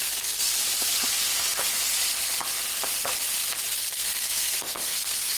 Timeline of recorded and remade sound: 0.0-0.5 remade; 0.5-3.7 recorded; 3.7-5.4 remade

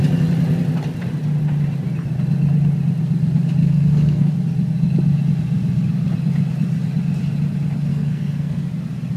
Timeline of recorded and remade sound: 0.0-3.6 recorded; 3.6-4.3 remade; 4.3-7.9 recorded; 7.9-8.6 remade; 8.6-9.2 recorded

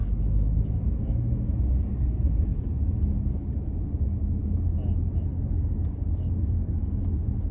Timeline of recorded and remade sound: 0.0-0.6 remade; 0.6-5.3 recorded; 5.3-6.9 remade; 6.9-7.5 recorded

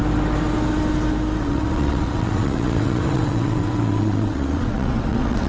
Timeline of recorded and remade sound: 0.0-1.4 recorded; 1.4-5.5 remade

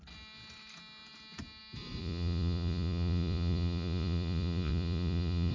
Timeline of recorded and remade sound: 0.0-2.0 recorded; 2.0-5.5 remade

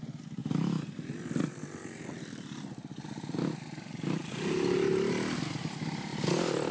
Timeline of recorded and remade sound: 0.0-0.4 recorded; 0.4-4.3 remade; 4.3-6.7 recorded